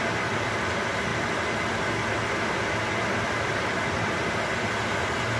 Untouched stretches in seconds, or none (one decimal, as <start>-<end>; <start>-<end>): 0.0-5.4